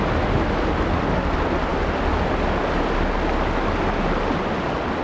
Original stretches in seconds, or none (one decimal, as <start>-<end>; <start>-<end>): 0.0-5.0